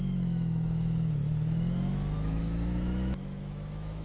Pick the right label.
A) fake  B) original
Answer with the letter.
A